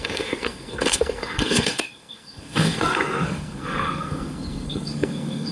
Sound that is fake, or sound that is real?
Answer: fake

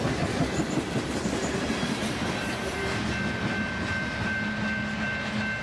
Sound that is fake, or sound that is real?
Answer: real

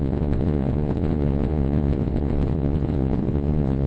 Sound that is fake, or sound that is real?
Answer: fake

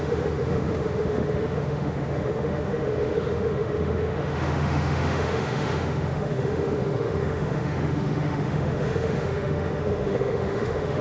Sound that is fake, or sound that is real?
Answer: fake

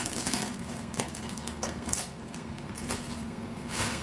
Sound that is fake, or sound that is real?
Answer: fake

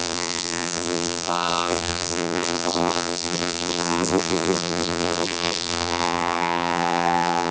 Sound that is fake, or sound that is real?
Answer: fake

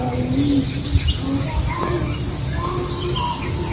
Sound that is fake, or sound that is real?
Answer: real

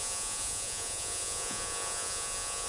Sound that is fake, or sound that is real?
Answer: fake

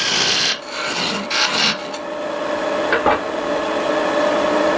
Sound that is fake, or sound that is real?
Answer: real